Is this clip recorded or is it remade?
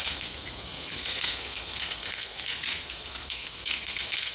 remade